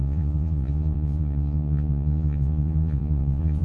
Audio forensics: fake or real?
fake